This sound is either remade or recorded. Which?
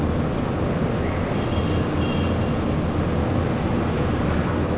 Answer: recorded